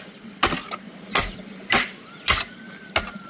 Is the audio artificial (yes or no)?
no